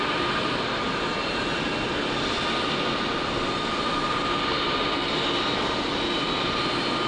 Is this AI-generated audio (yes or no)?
no